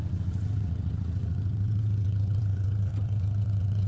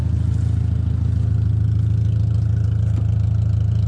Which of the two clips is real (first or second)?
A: second